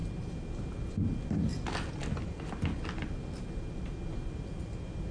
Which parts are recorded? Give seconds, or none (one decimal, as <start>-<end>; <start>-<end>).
0.0-5.1